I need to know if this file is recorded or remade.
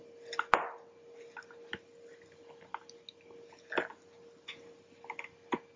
recorded